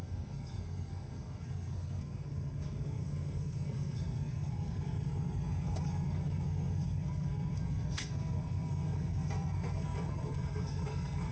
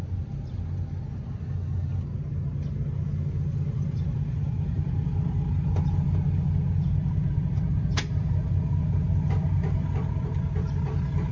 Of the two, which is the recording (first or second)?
second